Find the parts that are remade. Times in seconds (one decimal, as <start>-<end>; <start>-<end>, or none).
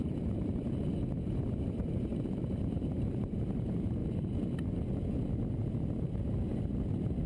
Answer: 0.0-0.5; 1.2-4.0; 5.4-6.5